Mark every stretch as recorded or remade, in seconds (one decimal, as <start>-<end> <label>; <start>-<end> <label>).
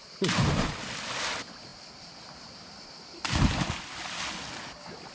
0.0-5.1 recorded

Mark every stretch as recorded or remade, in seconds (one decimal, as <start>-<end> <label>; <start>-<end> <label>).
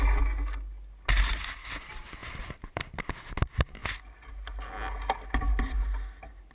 0.0-2.2 recorded; 2.2-2.8 remade; 2.8-6.5 recorded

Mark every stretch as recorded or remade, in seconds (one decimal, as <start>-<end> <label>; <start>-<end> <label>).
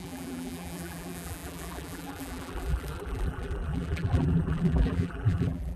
0.0-5.8 remade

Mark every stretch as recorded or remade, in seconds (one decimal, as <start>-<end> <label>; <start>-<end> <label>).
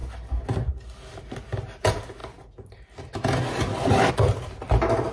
0.0-5.1 recorded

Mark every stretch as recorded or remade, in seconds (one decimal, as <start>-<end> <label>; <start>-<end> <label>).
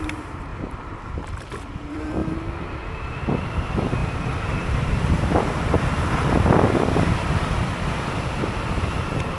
0.0-2.2 remade; 2.2-3.3 recorded; 3.3-9.4 remade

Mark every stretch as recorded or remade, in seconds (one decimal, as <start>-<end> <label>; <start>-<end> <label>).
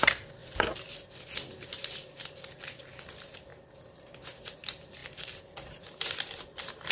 0.0-6.9 recorded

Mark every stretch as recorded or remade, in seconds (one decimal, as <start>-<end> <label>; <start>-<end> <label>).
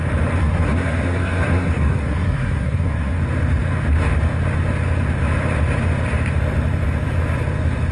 0.0-0.4 recorded; 0.4-3.2 remade; 3.2-7.9 recorded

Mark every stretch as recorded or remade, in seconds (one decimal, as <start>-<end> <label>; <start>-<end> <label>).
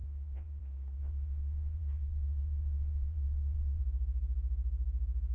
0.0-0.6 remade; 0.6-1.0 recorded; 1.0-3.8 remade; 3.8-5.3 recorded